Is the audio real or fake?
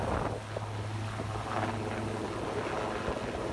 real